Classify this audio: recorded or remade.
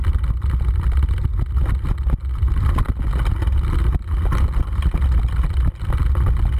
recorded